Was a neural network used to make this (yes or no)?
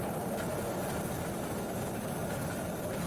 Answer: no